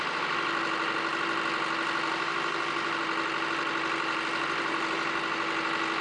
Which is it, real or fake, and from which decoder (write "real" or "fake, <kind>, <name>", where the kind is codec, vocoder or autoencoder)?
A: real